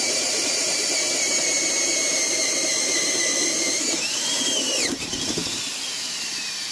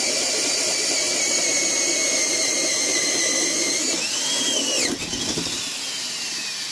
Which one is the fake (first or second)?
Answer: first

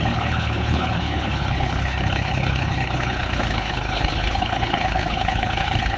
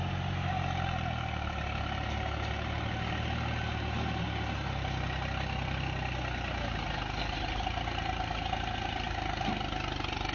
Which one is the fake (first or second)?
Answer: first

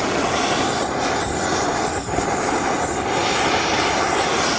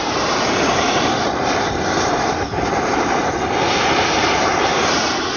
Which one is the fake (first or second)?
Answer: second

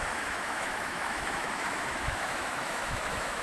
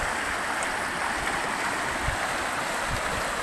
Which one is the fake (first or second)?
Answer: first